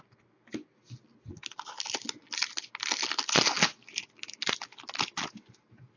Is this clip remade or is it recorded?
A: recorded